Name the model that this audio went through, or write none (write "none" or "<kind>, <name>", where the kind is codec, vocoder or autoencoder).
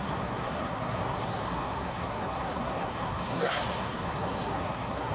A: codec, SNAC